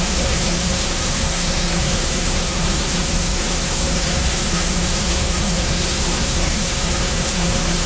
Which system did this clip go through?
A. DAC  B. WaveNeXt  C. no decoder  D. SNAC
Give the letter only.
D